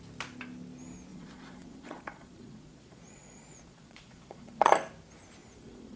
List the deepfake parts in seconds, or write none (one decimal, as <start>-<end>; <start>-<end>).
1.1-4.7; 5.4-6.0